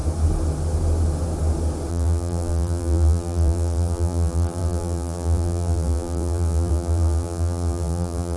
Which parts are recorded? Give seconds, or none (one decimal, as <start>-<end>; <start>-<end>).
0.0-1.9